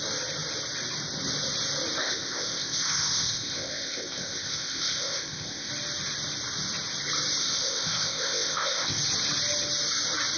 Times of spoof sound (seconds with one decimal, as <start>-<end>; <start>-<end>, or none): 2.0-5.7; 7.4-9.0